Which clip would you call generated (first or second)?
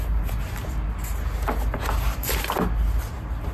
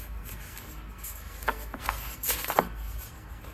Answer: second